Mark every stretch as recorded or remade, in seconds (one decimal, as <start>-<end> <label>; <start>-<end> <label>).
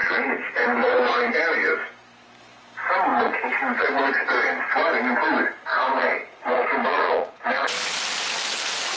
0.0-1.3 remade; 1.3-3.1 recorded; 3.1-4.0 remade; 4.0-5.7 recorded; 5.7-7.7 remade; 7.7-9.0 recorded